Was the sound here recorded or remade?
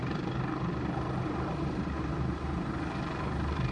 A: recorded